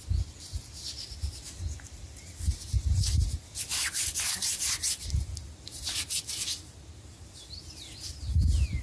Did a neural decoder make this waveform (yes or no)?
no